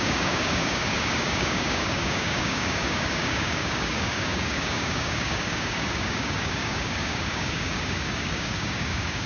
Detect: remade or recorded remade